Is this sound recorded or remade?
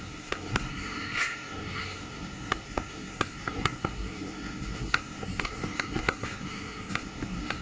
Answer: remade